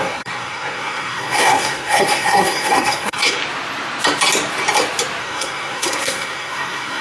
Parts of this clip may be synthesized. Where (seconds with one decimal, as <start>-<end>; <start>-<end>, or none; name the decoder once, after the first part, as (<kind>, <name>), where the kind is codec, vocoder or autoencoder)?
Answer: 0.0-3.4 (codec, SNAC); 5.2-7.0